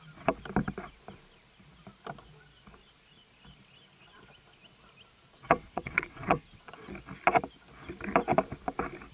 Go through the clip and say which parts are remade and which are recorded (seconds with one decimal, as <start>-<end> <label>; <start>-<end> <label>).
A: 0.0-5.4 recorded; 5.4-6.9 remade; 6.9-9.1 recorded